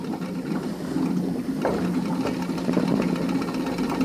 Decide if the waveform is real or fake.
real